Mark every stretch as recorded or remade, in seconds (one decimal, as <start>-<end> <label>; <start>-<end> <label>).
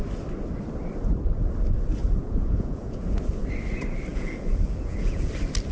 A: 0.0-2.0 recorded; 2.0-3.2 remade; 3.2-4.1 recorded; 4.1-5.3 remade; 5.3-5.7 recorded